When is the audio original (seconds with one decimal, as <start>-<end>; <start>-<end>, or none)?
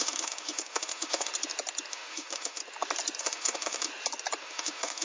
1.3-1.9; 2.6-3.2; 3.9-4.4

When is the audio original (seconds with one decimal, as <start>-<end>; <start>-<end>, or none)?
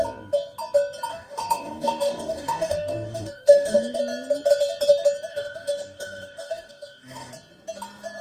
0.0-1.1; 4.0-5.3; 7.3-8.2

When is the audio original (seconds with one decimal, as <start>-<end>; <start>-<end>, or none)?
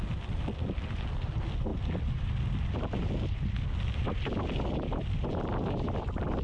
0.0-6.4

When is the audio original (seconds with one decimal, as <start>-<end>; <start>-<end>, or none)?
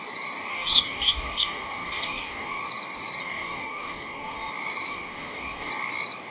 0.0-0.5; 2.6-3.2; 4.5-4.9; 5.7-6.3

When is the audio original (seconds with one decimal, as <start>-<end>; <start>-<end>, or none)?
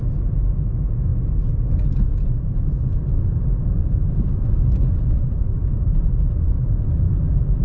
0.0-3.8; 7.1-7.6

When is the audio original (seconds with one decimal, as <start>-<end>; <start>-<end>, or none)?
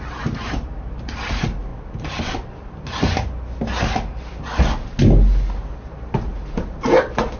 1.7-5.9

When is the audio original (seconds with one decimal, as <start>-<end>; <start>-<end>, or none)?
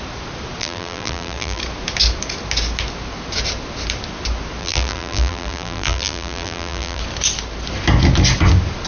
0.0-0.6; 1.6-4.6; 7.0-8.9